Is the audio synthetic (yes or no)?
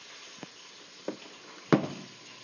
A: no